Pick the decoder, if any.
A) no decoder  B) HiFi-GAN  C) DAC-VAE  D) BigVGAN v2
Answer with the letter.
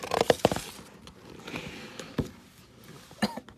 A